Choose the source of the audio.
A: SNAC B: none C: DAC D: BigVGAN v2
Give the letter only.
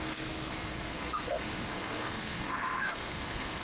A